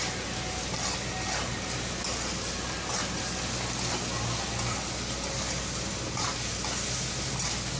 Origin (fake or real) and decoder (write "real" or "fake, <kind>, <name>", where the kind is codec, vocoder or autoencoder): real